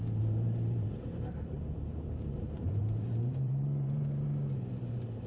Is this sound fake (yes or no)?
yes